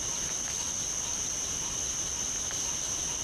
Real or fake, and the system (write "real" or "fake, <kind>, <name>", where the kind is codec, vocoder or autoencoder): real